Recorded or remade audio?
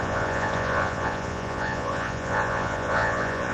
remade